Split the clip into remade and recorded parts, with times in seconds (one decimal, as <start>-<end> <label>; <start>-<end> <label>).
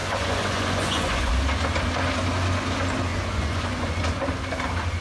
0.0-1.3 remade; 1.3-3.1 recorded; 3.1-4.2 remade; 4.2-5.0 recorded